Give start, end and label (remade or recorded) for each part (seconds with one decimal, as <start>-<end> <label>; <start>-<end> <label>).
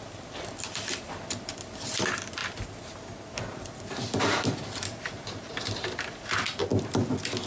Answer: 0.0-6.7 remade; 6.7-7.5 recorded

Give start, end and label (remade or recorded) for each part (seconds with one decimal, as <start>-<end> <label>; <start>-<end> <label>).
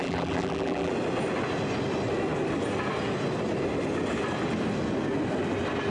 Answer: 0.0-0.9 remade; 0.9-5.9 recorded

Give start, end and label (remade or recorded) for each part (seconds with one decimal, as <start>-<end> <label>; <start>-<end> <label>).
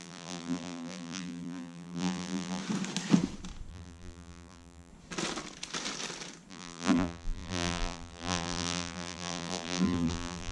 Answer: 0.0-2.6 remade; 2.6-3.7 recorded; 3.7-4.9 remade; 4.9-6.5 recorded; 6.5-10.5 remade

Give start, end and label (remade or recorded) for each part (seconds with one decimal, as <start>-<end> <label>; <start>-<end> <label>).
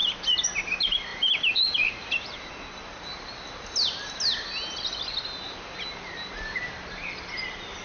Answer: 0.0-1.1 recorded; 1.1-2.5 remade; 2.5-7.8 recorded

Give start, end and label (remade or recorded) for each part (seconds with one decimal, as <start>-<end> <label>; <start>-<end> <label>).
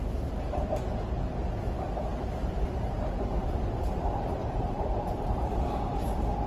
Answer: 0.0-2.1 recorded; 2.1-6.0 remade; 6.0-6.5 recorded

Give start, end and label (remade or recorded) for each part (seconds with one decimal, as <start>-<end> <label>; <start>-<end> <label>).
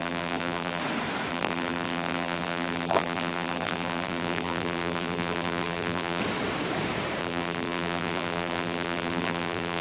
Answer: 0.0-0.8 remade; 0.8-1.3 recorded; 1.3-6.2 remade; 6.2-7.2 recorded; 7.2-9.8 remade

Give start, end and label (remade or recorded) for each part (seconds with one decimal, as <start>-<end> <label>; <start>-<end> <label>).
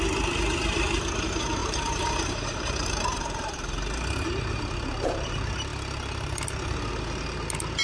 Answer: 0.0-1.6 recorded; 1.6-4.6 remade; 4.6-7.8 recorded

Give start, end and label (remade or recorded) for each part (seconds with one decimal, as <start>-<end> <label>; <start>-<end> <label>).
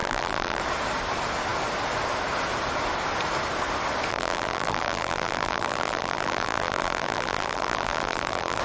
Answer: 0.0-0.6 remade; 0.6-4.1 recorded; 4.1-8.6 remade